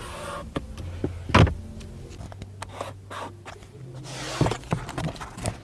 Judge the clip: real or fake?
real